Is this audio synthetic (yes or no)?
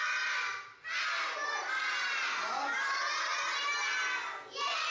no